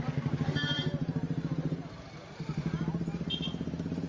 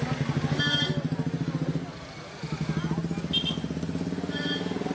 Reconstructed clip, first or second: first